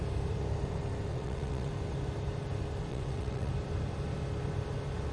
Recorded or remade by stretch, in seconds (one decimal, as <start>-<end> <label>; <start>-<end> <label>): 0.0-1.1 recorded; 1.1-1.7 remade; 1.7-2.9 recorded; 2.9-3.5 remade; 3.5-5.1 recorded